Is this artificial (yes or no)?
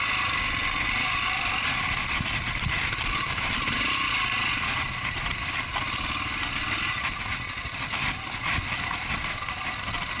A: no